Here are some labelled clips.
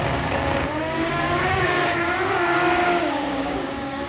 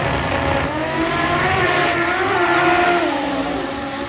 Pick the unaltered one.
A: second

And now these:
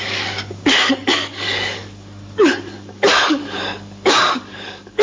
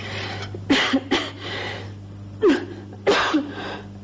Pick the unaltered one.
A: second